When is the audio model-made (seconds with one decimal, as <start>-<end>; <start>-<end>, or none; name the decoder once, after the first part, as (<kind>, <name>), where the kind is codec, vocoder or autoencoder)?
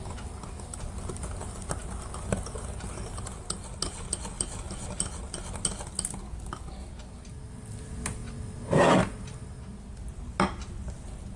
none